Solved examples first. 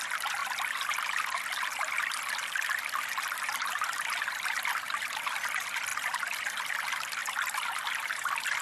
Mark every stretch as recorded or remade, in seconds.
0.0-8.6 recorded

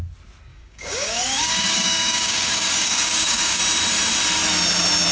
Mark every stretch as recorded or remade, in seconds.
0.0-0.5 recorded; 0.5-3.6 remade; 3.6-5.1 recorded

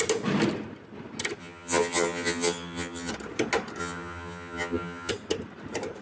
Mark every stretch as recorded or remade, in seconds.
0.0-1.4 recorded; 1.4-3.1 remade; 3.1-3.8 recorded; 3.8-5.1 remade; 5.1-6.0 recorded

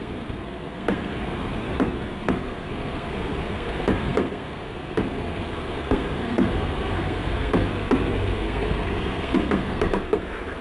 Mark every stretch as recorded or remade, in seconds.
0.0-10.6 remade